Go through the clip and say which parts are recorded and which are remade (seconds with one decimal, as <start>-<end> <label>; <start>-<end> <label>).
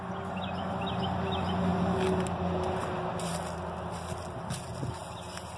0.0-5.6 recorded